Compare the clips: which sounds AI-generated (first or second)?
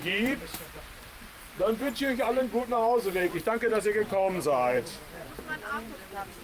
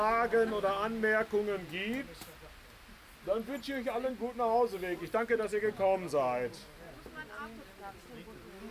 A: first